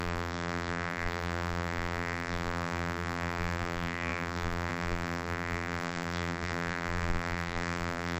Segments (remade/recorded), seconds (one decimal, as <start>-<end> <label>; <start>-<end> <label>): 0.0-8.2 remade